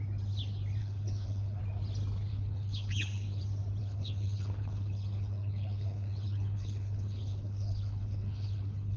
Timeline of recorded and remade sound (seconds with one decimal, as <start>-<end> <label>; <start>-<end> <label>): 0.0-0.8 recorded; 0.8-1.6 remade; 1.6-2.3 recorded; 2.3-3.4 remade; 3.4-3.8 recorded; 3.8-9.0 remade